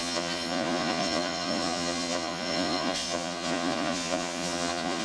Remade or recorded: remade